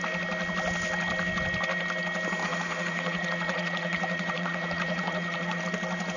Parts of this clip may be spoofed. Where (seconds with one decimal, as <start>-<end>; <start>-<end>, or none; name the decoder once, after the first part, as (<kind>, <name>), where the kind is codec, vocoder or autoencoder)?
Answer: 2.4-5.6 (vocoder, Vocos)